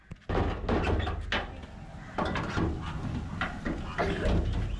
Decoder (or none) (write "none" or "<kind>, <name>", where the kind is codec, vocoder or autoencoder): none